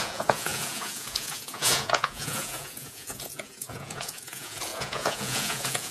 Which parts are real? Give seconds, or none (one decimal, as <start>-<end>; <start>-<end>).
none